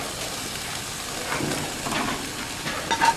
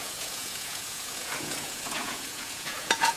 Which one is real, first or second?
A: first